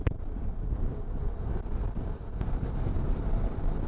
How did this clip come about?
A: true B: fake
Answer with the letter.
A